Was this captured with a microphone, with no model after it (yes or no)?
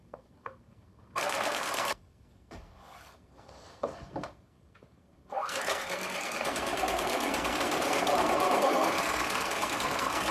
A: no